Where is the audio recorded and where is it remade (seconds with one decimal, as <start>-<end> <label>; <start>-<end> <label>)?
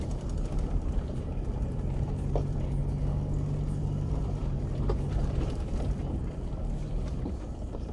0.0-2.8 remade; 2.8-3.8 recorded; 3.8-7.9 remade